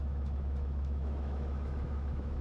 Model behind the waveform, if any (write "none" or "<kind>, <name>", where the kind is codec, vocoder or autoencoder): autoencoder, DAC-VAE